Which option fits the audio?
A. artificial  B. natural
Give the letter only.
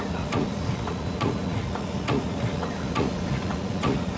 A